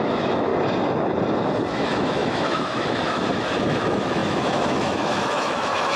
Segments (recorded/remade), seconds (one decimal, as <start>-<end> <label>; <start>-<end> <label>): 0.0-0.5 remade; 0.5-1.7 recorded; 1.7-6.0 remade